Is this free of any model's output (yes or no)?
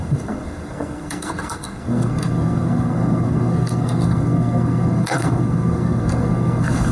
no